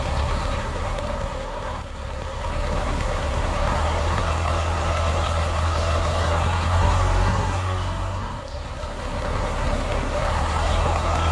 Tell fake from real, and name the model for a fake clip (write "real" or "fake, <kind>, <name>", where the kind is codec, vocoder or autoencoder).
fake, codec, SNAC